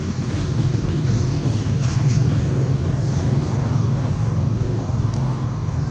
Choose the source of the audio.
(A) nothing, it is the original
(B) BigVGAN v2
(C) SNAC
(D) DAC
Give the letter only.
D